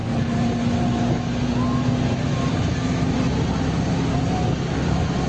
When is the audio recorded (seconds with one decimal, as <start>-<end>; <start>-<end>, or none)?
0.0-5.3